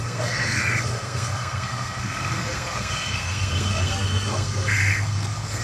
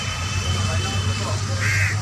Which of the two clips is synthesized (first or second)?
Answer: first